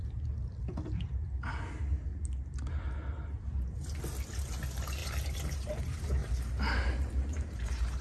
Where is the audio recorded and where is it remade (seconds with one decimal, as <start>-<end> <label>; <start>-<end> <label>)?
0.0-5.0 recorded; 5.0-5.7 remade; 5.7-6.2 recorded; 6.2-8.0 remade